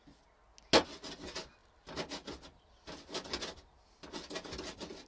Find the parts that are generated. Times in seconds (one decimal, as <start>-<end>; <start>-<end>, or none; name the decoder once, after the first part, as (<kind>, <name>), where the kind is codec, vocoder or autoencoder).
none